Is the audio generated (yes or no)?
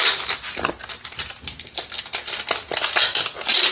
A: no